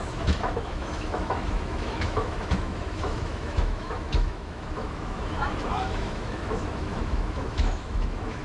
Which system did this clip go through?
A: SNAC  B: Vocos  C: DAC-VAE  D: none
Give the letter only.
C